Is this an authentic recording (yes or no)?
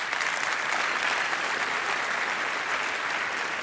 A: yes